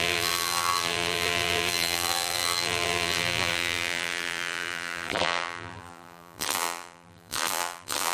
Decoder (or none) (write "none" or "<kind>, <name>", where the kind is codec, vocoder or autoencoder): vocoder, BigVGAN v2